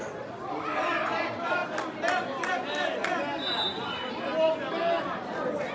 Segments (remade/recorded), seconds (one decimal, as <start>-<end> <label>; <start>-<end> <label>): 0.0-1.6 remade; 1.6-5.0 recorded; 5.0-5.7 remade